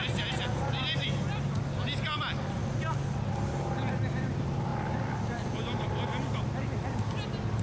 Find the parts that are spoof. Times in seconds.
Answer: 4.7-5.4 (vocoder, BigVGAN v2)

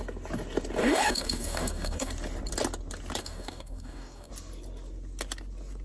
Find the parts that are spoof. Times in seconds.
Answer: 0.8-2.1 (codec, DAC); 3.2-4.3